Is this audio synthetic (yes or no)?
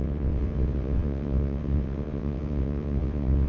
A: yes